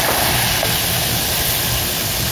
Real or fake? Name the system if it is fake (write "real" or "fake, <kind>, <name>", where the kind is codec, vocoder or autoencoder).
real